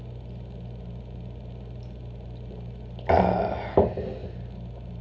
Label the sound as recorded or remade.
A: recorded